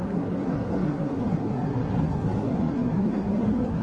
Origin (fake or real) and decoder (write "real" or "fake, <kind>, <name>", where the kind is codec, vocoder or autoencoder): fake, codec, SNAC